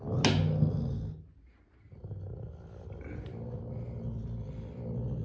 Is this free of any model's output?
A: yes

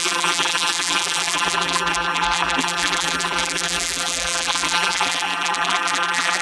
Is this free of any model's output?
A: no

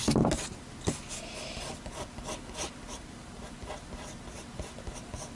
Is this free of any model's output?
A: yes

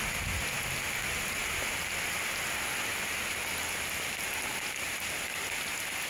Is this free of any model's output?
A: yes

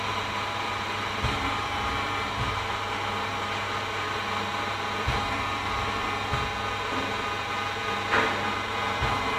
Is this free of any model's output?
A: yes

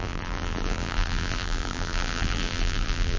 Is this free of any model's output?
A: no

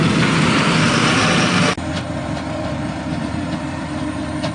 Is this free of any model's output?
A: no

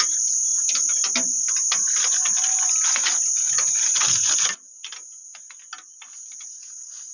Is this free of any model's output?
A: yes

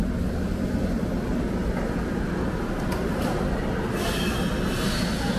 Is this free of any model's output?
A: yes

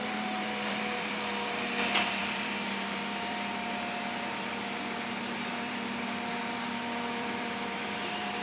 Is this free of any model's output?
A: no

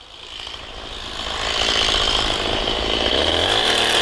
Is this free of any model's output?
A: yes